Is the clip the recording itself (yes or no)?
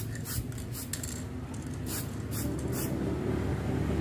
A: yes